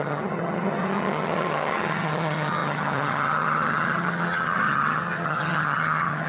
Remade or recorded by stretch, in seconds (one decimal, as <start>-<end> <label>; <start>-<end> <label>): 0.0-6.3 remade